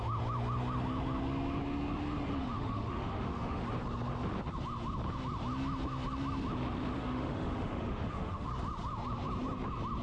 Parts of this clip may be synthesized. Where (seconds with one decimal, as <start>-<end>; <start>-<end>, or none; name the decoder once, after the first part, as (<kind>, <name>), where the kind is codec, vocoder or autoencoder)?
2.4-3.6 (autoencoder, DAC-VAE); 7.0-8.5

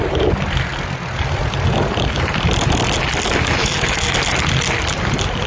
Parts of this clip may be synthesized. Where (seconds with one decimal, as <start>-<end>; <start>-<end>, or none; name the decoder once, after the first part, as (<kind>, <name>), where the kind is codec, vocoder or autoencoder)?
3.6-4.1 (autoencoder, DAC-VAE)

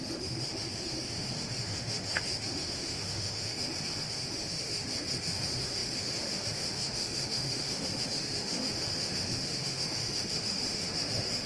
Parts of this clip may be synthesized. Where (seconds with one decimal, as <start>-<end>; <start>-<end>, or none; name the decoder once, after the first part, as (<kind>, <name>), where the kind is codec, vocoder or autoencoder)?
0.0-11.5 (autoencoder, DAC-VAE)

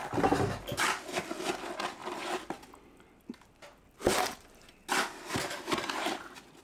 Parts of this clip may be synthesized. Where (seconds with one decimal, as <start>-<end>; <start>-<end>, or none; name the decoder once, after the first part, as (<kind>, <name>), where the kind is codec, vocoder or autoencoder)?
none

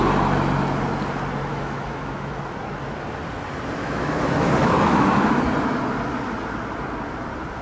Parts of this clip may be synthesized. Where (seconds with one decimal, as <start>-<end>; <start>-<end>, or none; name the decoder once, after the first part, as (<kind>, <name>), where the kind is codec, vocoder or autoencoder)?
1.5-2.4 (autoencoder, DAC-VAE); 3.8-5.4

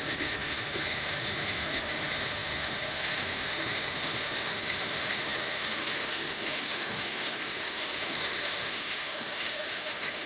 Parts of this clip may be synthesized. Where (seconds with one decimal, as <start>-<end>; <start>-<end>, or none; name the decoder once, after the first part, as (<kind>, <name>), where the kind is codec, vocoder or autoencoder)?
0.0-10.3 (autoencoder, DAC-VAE)